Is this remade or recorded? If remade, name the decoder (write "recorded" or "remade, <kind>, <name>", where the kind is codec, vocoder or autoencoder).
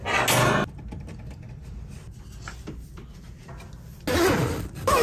recorded